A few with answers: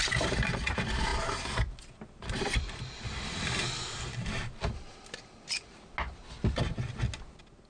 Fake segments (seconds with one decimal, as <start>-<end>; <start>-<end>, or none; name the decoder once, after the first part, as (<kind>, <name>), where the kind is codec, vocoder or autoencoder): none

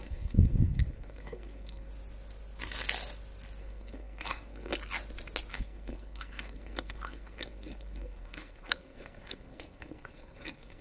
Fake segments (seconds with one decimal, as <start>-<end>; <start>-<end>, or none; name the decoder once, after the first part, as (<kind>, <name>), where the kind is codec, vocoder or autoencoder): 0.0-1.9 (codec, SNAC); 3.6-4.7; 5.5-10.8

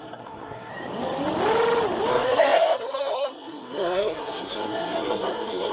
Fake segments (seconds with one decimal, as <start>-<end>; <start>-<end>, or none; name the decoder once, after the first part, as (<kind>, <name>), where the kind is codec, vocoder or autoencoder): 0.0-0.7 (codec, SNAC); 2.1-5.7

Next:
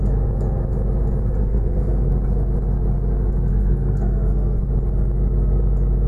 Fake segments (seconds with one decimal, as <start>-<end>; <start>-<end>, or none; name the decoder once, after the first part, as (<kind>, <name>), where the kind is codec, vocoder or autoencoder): 1.4-2.1 (codec, SNAC); 3.5-4.7

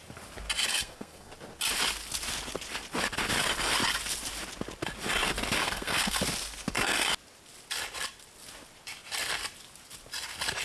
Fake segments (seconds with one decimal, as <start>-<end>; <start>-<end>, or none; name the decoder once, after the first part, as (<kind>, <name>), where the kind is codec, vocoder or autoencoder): 0.7-1.3 (codec, SNAC); 5.6-6.2

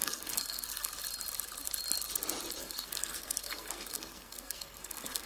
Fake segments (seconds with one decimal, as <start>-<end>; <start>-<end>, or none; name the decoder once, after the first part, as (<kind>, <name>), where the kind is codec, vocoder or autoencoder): 0.0-0.9 (codec, SNAC); 2.6-5.3

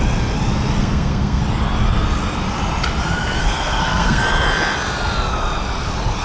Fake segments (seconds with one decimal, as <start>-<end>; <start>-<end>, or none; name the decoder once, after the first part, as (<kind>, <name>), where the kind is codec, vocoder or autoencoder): 0.8-1.4 (codec, SNAC); 3.4-4.2

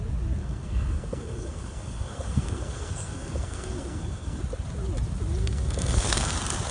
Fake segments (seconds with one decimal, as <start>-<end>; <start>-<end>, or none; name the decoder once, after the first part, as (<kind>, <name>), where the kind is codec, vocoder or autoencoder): 0.4-4.4 (codec, SNAC); 5.4-6.3